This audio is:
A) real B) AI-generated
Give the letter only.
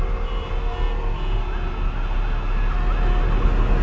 A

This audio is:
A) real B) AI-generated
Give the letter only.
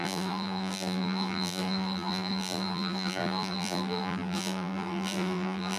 B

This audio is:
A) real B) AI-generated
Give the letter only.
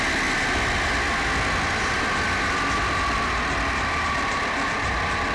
A